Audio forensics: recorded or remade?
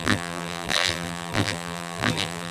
remade